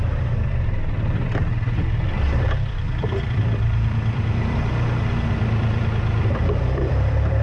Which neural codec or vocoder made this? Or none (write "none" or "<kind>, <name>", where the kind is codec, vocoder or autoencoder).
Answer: vocoder, BigVGAN v2